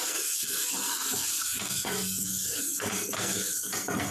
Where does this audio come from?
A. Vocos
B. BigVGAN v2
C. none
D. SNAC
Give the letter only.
D